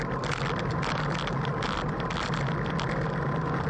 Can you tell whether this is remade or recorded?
recorded